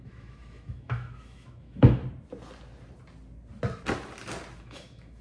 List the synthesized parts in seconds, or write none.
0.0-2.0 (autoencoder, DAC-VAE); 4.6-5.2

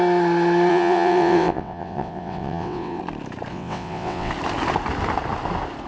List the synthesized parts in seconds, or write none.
0.7-3.0 (vocoder, WaveNeXt); 3.5-4.3

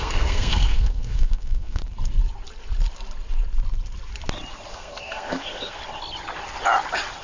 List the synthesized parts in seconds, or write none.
0.0-1.8 (codec, SNAC); 4.7-5.8

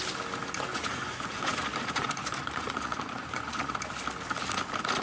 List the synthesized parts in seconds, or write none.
0.7-3.7 (vocoder, Vocos)

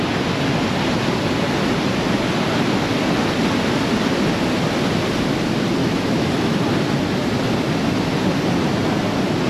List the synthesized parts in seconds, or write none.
5.8-6.6 (autoencoder, DAC-VAE)

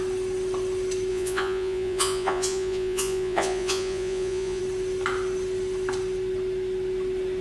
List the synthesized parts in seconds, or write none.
1.1-4.6 (vocoder, Vocos)

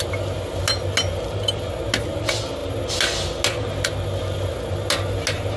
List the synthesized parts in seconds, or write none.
none